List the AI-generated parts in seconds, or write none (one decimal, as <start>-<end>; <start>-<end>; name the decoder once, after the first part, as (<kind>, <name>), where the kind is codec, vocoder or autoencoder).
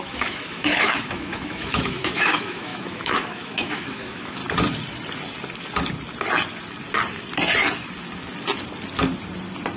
0.0-4.4 (autoencoder, DAC-VAE)